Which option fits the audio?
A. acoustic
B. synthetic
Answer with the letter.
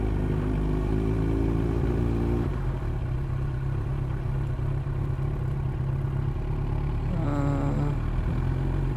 A